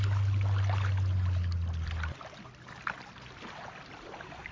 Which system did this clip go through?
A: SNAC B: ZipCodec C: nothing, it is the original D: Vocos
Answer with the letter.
C